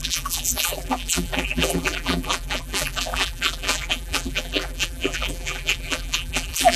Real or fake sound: fake